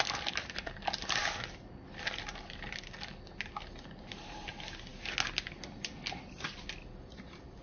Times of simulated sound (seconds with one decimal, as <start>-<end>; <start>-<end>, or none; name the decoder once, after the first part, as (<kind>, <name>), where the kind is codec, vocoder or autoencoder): none